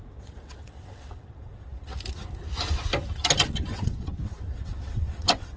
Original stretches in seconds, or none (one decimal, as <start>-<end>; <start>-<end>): 1.9-3.7